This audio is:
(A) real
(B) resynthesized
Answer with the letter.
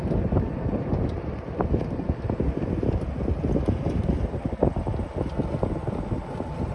A